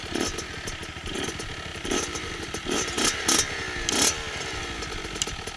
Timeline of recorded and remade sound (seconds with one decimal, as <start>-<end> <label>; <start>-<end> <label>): 0.0-1.7 recorded; 1.7-3.2 remade; 3.2-5.6 recorded